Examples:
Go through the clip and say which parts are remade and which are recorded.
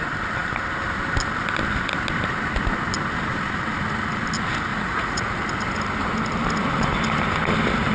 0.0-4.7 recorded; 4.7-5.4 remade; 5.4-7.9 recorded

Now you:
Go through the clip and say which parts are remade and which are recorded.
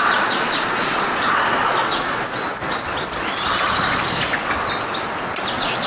0.0-2.4 remade; 2.4-5.5 recorded; 5.5-5.9 remade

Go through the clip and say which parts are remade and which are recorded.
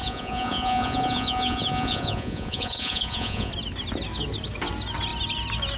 0.0-3.5 remade; 3.5-5.8 recorded